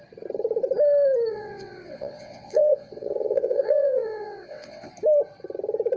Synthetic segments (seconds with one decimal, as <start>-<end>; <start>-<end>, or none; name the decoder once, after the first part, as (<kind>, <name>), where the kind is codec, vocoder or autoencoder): 1.3-4.9 (vocoder, WaveNeXt)